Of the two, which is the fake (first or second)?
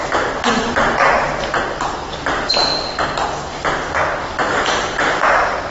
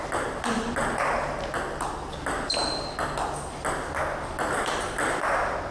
first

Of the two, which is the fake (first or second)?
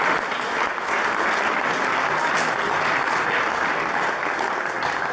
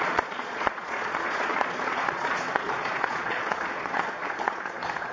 second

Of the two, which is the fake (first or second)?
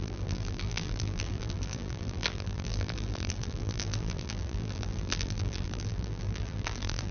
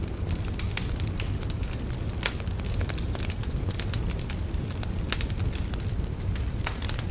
first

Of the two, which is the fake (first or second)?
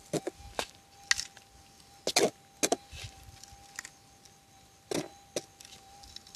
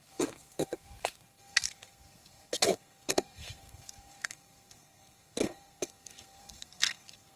second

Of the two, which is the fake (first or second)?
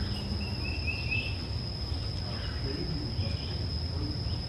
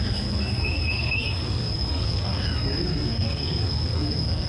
second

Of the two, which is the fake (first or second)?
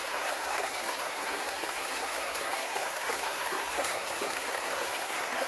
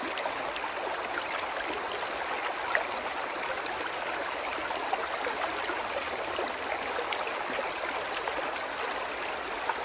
first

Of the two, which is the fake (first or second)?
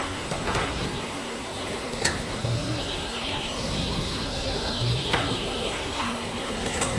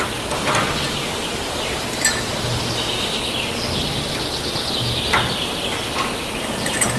first